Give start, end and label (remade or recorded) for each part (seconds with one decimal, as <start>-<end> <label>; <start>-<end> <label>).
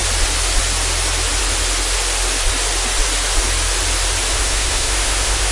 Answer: 0.0-4.3 recorded; 4.3-5.5 remade